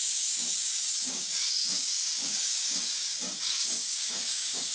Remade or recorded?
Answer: remade